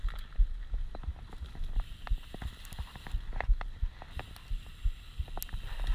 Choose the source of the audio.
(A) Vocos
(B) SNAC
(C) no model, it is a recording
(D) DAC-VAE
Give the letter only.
C